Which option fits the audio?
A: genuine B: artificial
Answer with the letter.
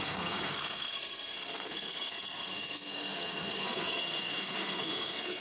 B